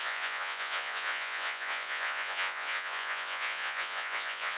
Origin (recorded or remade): remade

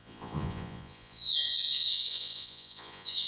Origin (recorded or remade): remade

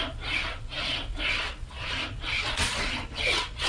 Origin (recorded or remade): remade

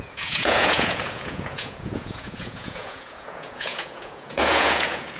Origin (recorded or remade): remade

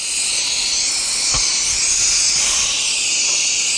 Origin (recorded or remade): recorded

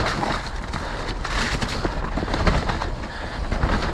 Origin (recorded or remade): recorded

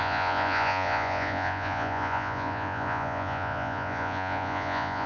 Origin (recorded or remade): remade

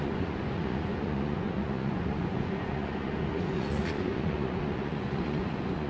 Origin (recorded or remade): remade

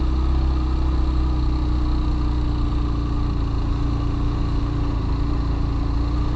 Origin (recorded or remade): recorded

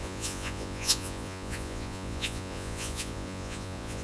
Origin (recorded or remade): remade